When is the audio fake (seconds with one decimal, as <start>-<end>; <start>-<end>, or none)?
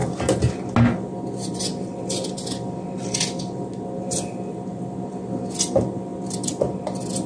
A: none